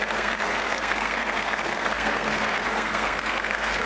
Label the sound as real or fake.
fake